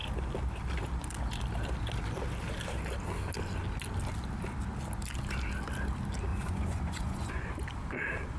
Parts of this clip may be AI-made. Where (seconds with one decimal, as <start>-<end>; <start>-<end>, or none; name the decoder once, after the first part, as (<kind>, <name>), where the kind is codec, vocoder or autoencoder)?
6.3-7.5 (vocoder, Vocos)